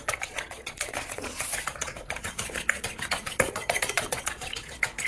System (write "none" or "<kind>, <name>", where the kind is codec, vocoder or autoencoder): vocoder, Vocos